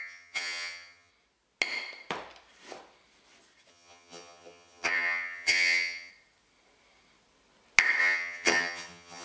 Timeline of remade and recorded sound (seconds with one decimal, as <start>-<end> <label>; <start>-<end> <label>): 0.0-1.1 remade; 1.1-3.7 recorded; 3.7-6.1 remade; 6.1-8.0 recorded; 8.0-9.2 remade